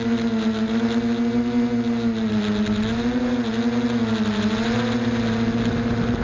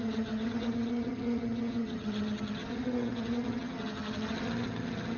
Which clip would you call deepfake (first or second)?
second